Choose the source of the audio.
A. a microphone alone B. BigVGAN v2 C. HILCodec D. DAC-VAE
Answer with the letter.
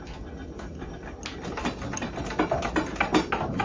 A